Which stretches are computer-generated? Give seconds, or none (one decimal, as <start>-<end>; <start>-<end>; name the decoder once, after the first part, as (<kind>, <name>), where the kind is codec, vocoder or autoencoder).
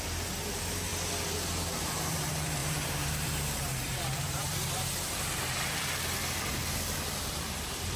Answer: 0.0-0.9 (vocoder, BigVGAN v2); 2.1-5.4; 7.3-8.0